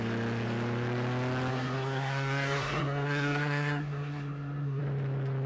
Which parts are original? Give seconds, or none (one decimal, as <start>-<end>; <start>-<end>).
0.0-1.5; 4.8-5.5